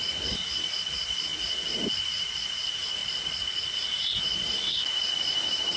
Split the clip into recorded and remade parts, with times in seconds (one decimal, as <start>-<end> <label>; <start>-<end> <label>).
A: 0.0-5.8 recorded

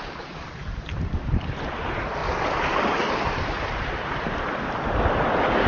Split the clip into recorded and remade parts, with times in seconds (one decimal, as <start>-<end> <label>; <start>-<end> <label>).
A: 0.0-5.7 recorded

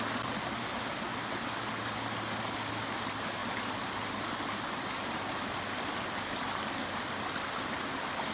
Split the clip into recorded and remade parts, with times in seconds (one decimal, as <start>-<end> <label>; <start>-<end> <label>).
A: 0.0-8.3 recorded

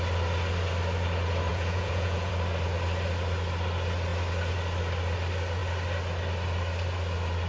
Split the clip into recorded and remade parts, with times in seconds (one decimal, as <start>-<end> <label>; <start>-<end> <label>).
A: 0.0-1.5 recorded; 1.5-2.3 remade; 2.3-7.5 recorded